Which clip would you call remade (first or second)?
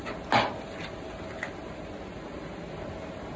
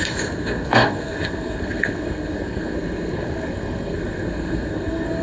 second